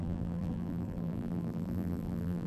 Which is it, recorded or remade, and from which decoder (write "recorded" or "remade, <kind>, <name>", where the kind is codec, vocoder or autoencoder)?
remade, vocoder, BigVGAN v2